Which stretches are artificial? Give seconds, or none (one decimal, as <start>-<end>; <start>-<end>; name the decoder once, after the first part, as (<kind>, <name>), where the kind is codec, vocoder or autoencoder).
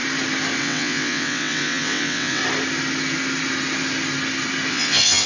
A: 0.6-2.4 (vocoder, WaveNeXt); 4.7-5.3